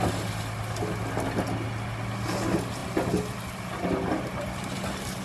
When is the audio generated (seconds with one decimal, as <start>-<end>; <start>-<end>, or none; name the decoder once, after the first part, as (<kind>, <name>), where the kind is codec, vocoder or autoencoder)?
none